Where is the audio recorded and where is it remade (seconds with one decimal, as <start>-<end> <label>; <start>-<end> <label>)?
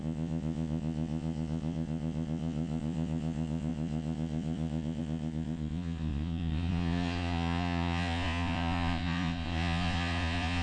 0.0-10.6 remade